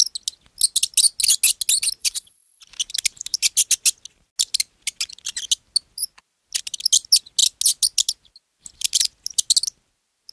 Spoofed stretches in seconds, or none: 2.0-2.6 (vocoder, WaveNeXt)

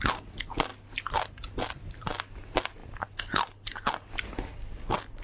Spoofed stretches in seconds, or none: none

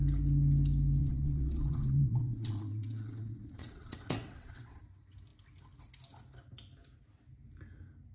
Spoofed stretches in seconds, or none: 1.0-4.8 (vocoder, WaveNeXt)

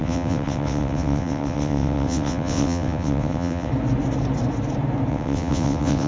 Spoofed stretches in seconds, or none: 0.0-3.7 (vocoder, WaveNeXt); 5.1-6.1

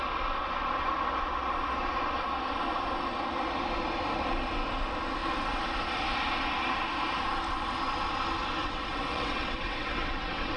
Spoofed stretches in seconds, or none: 8.6-10.6 (vocoder, WaveNeXt)

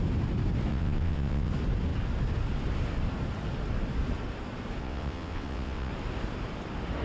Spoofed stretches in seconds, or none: 0.7-1.5 (vocoder, WaveNeXt); 4.8-5.9

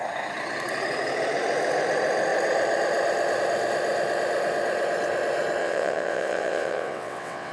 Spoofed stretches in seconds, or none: 5.6-7.5 (vocoder, WaveNeXt)